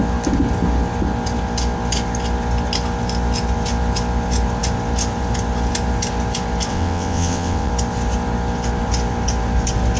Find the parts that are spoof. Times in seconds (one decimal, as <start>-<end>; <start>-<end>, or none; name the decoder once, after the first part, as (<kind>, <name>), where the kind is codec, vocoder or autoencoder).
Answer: 6.7-7.7 (vocoder, WaveNeXt)